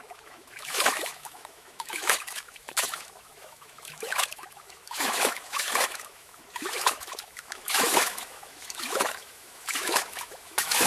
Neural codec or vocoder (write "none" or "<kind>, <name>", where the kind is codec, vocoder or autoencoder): autoencoder, DAC-VAE